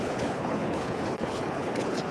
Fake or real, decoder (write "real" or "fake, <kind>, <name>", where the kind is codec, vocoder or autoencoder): fake, codec, HILCodec